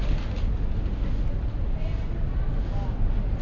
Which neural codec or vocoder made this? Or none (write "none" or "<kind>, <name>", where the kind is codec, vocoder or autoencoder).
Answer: none